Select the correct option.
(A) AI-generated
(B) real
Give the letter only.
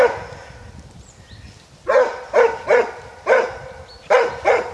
A